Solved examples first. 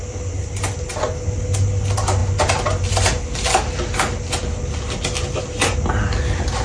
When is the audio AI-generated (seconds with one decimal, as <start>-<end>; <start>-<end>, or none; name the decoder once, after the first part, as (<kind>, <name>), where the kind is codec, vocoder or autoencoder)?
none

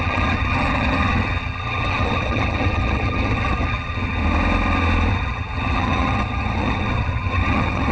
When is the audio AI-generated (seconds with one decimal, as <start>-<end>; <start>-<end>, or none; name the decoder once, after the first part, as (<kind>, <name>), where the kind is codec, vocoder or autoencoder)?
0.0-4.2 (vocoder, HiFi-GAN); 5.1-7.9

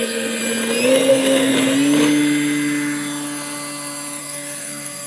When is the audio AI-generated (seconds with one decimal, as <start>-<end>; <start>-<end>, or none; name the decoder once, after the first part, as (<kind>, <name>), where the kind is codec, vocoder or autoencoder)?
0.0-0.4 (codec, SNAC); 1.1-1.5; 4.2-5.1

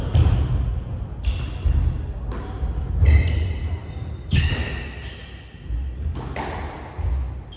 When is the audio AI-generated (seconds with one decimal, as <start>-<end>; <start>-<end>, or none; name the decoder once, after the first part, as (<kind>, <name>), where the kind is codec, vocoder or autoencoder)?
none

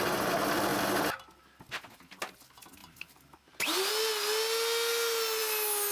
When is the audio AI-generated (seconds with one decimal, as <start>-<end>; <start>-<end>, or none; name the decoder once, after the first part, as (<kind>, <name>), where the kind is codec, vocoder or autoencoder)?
2.8-3.9 (vocoder, BigVGAN v2)

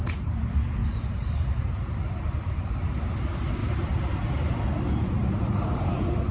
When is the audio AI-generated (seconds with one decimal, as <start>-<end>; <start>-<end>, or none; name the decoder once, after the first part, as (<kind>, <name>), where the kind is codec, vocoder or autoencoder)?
0.8-3.0 (vocoder, BigVGAN v2); 3.6-4.3; 5.2-6.3

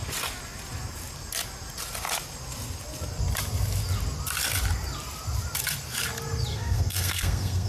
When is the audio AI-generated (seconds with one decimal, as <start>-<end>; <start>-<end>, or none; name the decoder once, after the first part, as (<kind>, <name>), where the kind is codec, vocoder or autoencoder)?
6.5-7.7 (codec, SNAC)